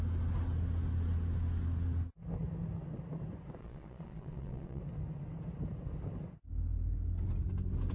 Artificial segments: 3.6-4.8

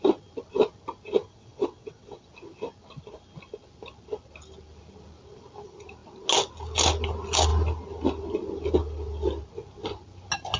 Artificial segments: 1.2-2.3

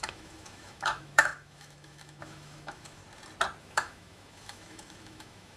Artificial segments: 0.0-3.0; 3.6-5.6

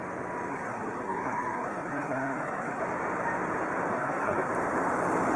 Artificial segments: 0.5-2.8; 3.9-4.5

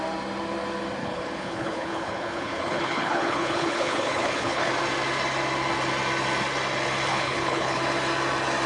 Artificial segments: 1.0-4.7; 7.1-7.8

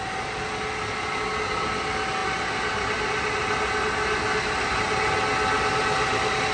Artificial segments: none

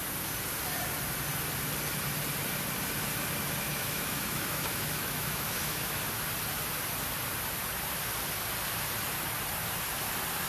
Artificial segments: 3.7-6.0

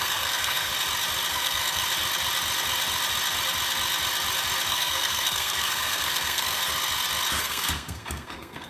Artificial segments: 0.0-0.7; 1.3-1.8; 4.7-6.6; 7.4-8.7